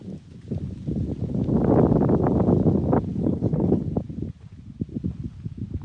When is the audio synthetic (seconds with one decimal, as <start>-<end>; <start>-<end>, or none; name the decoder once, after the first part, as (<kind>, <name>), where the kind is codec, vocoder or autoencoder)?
3.1-3.8 (codec, HILCodec)